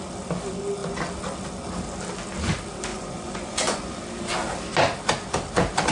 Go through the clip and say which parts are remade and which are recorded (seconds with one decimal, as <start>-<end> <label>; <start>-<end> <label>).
0.0-2.9 recorded; 2.9-3.9 remade; 3.9-5.9 recorded